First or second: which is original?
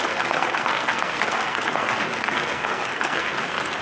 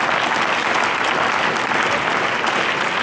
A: second